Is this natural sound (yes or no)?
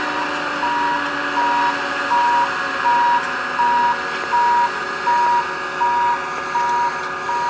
yes